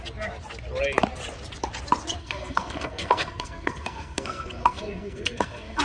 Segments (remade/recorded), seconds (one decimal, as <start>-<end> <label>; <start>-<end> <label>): 0.0-2.2 recorded; 2.2-5.8 remade